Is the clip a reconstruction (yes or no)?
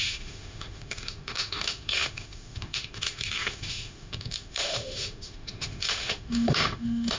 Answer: yes